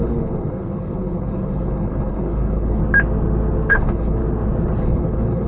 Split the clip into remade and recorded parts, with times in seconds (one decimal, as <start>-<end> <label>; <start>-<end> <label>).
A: 0.0-2.8 remade; 2.8-3.7 recorded; 3.7-4.2 remade; 4.2-4.8 recorded; 4.8-5.5 remade